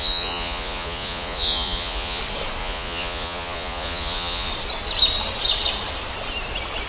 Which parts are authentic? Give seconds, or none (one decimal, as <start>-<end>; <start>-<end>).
2.2-2.6; 4.5-6.9